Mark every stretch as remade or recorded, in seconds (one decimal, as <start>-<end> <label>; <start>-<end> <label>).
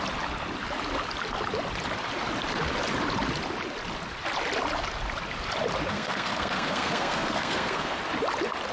0.0-5.9 recorded; 5.9-8.0 remade; 8.0-8.7 recorded